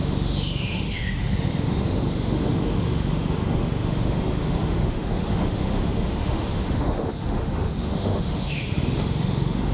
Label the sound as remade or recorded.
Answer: remade